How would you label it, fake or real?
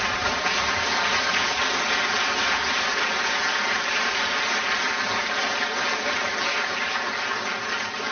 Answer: real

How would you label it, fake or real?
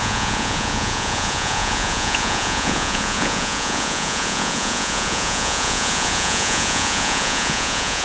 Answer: fake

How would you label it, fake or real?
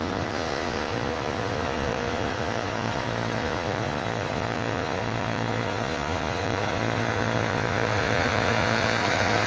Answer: fake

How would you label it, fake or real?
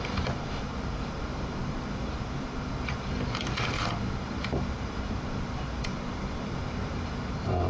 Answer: fake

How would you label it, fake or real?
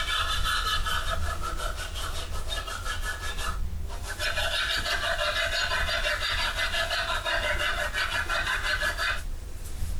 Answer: real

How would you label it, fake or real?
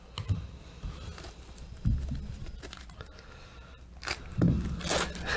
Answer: real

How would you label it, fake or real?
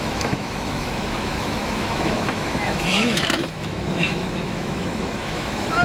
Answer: fake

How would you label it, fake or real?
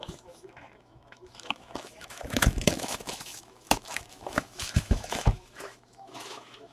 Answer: fake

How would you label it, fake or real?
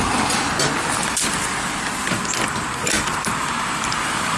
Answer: real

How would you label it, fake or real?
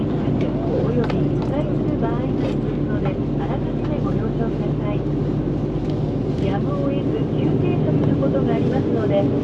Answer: real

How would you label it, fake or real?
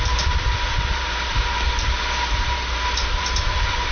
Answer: fake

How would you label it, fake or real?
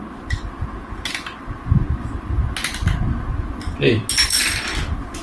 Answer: real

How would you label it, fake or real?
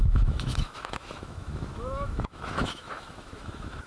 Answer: fake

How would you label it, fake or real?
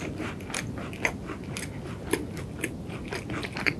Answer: real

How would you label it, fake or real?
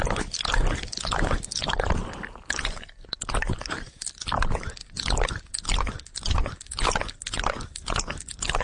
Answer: real